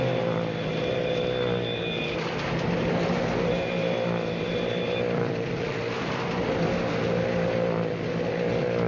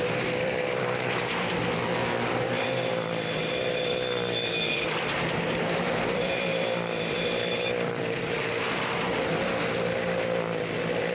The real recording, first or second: first